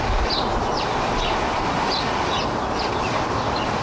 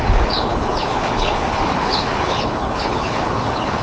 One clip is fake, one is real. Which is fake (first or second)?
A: second